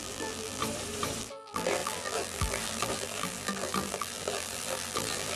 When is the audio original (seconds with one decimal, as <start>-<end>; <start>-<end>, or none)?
0.6-1.2